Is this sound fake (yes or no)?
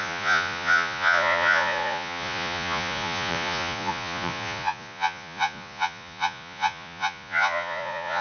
yes